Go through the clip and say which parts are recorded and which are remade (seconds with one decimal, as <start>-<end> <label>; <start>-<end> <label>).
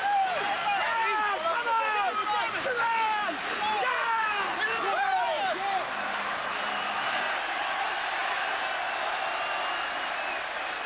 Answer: 0.0-10.9 recorded